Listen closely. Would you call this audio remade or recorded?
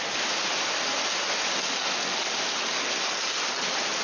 recorded